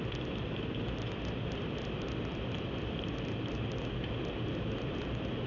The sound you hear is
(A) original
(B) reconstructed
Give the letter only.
A